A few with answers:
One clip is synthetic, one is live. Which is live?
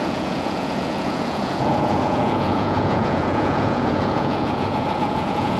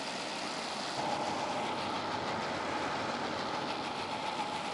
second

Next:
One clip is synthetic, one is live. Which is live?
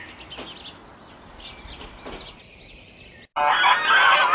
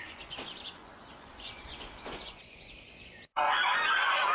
first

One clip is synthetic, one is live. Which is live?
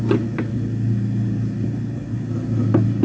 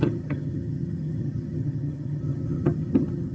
first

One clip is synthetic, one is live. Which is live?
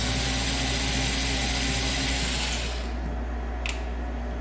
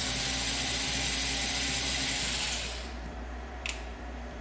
first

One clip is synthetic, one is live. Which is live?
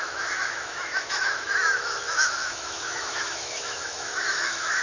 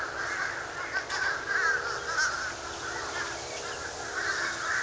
second